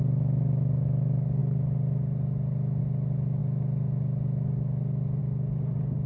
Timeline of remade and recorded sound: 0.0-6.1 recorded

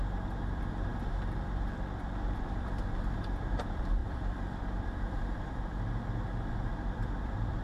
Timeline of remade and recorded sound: 0.0-7.6 remade

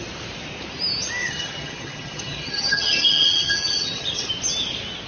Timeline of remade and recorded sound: 0.0-1.2 recorded; 1.2-4.3 remade; 4.3-5.1 recorded

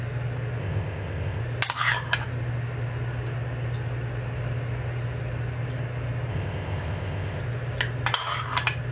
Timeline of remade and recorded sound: 0.0-0.6 recorded; 0.6-1.4 remade; 1.4-6.3 recorded; 6.3-7.4 remade; 7.4-8.9 recorded